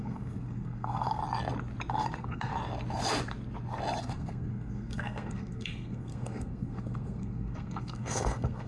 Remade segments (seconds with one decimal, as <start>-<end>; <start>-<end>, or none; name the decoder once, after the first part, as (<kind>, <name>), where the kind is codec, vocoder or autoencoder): 0.0-1.2 (codec, SNAC); 1.9-2.5; 4.0-8.7

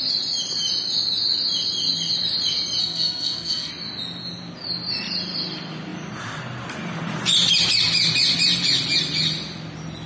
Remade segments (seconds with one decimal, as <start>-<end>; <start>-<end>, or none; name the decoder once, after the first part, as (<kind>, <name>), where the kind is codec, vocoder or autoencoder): 2.8-3.7 (codec, SNAC)

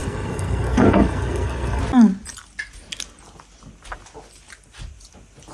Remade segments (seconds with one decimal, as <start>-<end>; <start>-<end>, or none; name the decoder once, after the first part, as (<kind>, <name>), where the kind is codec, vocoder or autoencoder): 0.0-1.8 (codec, SNAC)

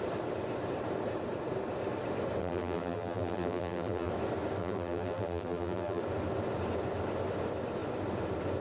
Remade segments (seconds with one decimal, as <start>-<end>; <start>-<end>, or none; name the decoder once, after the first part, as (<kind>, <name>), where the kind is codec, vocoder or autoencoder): 2.4-4.1 (vocoder, BigVGAN v2); 4.6-6.0

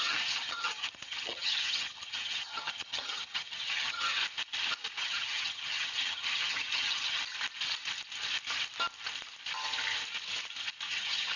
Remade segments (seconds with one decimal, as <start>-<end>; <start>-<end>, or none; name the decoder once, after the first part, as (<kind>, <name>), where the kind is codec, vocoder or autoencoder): 0.0-4.2 (vocoder, HiFi-GAN); 5.0-7.2; 10.9-11.4

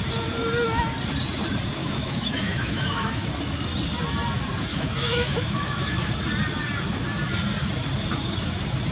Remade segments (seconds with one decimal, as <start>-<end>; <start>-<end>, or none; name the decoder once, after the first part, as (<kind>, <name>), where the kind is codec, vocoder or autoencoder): 1.8-3.3 (autoencoder, DAC-VAE); 4.7-6.1

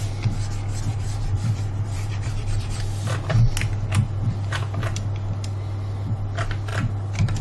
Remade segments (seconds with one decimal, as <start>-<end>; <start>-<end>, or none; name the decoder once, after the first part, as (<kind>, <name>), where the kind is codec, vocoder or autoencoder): 0.9-2.8 (vocoder, BigVGAN v2)